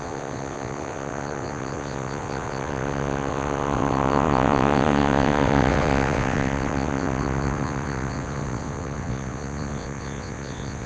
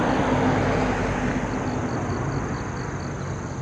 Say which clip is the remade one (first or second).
first